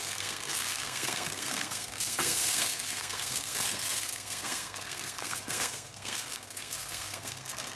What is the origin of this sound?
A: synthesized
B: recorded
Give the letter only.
A